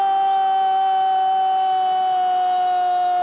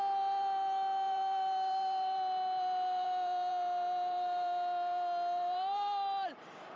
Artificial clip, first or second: second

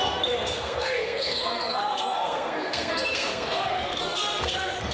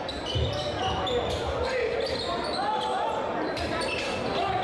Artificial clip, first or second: first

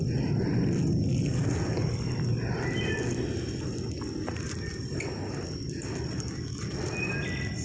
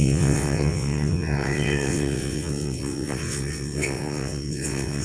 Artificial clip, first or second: second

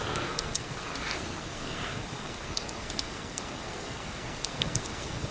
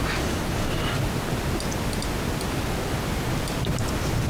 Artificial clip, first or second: first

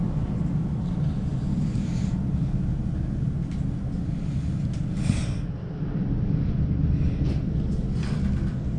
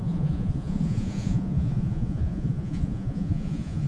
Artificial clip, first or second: second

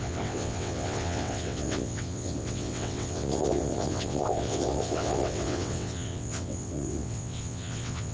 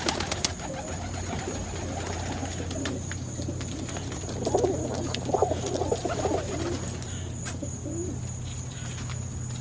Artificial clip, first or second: first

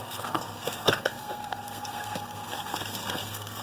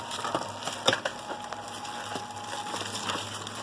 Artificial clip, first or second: first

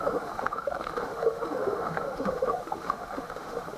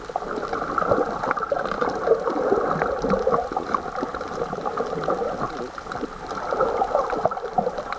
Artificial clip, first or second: first